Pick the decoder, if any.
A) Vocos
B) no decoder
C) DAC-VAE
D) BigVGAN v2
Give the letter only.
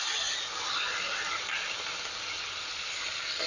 B